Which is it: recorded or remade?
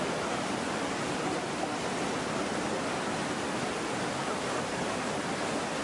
recorded